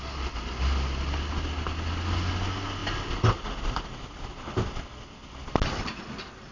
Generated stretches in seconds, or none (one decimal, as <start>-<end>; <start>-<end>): none